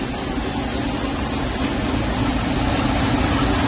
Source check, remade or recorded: recorded